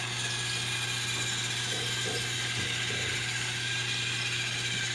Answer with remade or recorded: recorded